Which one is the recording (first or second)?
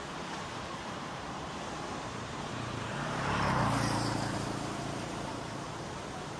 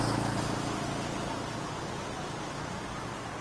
second